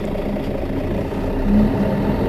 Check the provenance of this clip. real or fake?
real